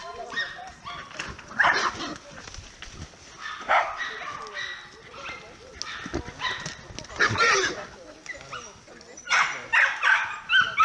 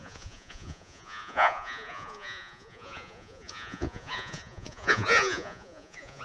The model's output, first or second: second